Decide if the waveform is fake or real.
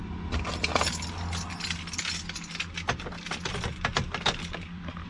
real